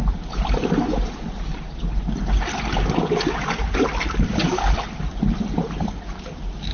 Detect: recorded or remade recorded